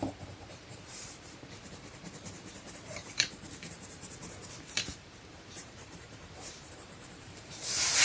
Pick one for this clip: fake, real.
fake